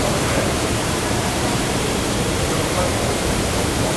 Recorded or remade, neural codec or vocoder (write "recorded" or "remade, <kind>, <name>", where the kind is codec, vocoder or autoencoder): remade, vocoder, BigVGAN v2